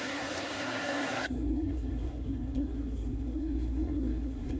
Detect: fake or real fake